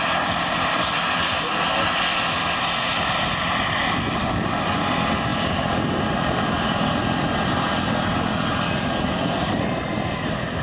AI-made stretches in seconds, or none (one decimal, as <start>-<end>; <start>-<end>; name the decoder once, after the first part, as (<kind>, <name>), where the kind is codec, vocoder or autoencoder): none

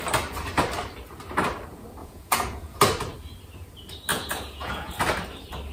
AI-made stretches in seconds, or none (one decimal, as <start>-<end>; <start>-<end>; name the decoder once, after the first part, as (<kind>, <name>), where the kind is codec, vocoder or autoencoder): 2.0-2.8 (vocoder, Vocos); 4.1-5.0

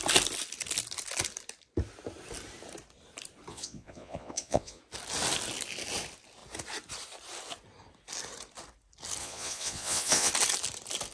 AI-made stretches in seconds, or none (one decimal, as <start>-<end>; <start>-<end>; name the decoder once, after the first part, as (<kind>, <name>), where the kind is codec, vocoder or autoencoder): 3.5-4.8 (vocoder, Vocos); 9.2-10.3

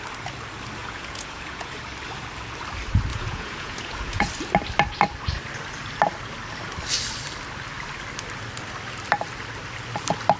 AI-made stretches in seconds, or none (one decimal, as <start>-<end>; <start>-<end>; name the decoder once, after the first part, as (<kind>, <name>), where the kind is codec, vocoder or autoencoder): 0.8-1.8 (vocoder, Vocos); 3.1-4.3

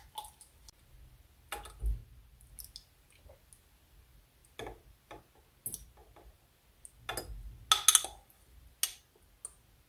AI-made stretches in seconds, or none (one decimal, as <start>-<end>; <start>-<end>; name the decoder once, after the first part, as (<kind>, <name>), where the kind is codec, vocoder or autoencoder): none

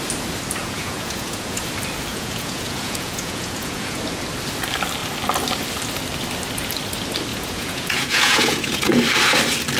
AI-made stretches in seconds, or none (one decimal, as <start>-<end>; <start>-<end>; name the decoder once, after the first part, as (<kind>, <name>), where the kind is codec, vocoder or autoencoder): 0.6-1.6 (vocoder, Vocos); 2.1-4.0; 7.3-9.0